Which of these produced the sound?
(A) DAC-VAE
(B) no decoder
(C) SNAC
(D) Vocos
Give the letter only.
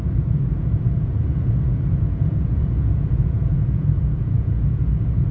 D